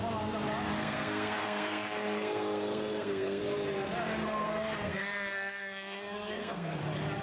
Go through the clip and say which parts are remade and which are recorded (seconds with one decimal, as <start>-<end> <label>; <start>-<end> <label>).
0.0-0.8 recorded; 0.8-3.4 remade; 3.4-4.2 recorded; 4.2-6.8 remade; 6.8-7.2 recorded